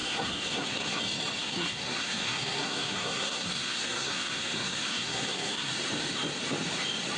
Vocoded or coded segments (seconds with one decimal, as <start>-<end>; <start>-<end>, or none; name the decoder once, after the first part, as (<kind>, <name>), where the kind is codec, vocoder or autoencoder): 0.0-1.0 (codec, SNAC); 1.4-5.7